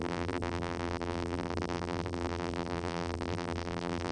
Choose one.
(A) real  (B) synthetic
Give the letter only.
B